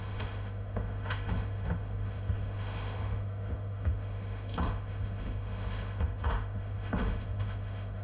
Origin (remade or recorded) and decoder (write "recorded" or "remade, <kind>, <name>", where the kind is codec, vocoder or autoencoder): remade, autoencoder, DAC-VAE